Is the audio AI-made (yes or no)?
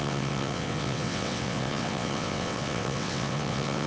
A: yes